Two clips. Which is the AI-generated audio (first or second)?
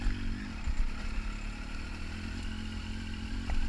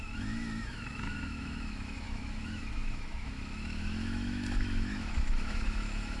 second